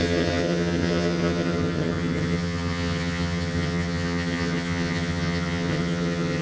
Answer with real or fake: fake